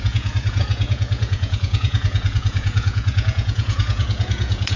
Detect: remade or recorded remade